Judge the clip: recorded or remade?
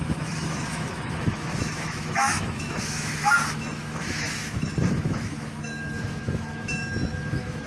remade